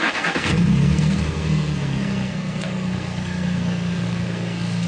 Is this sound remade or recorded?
remade